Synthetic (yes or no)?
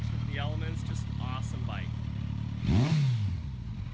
no